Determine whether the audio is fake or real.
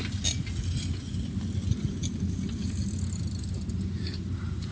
real